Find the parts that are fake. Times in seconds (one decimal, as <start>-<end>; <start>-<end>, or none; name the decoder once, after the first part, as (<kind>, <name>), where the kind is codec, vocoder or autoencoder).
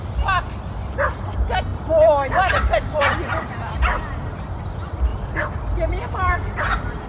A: 5.1-6.6 (vocoder, BigVGAN v2)